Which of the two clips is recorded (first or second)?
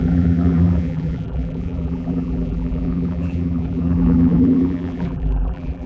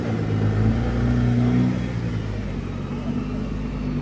second